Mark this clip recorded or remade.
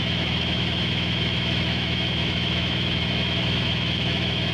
remade